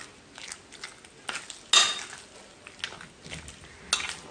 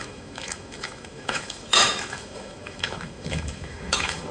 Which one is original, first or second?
first